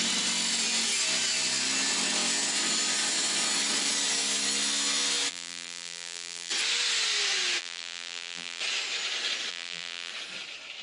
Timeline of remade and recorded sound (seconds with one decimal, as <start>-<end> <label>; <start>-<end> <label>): 0.0-5.3 recorded; 5.3-6.5 remade; 6.5-7.6 recorded; 7.6-8.6 remade; 8.6-9.5 recorded; 9.5-10.1 remade; 10.1-10.8 recorded